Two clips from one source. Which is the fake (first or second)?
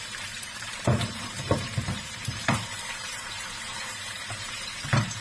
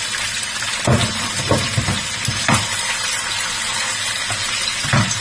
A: first